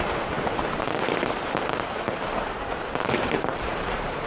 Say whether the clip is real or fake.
fake